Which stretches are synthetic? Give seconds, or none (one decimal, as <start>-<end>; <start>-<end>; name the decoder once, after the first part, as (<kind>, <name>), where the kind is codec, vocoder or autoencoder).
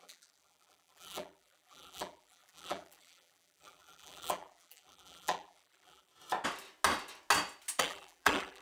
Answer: 0.0-6.1 (vocoder, BigVGAN v2); 7.8-8.6